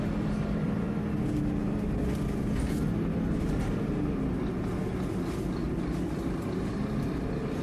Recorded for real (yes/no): yes